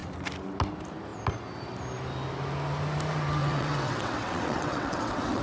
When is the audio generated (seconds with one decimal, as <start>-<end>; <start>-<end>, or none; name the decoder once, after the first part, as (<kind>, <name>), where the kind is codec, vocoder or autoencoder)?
3.4-5.4 (vocoder, WaveNeXt)